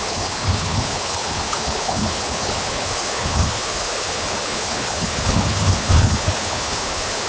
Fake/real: fake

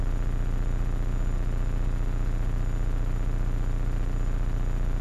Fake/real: real